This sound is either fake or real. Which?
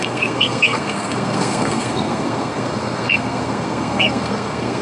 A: fake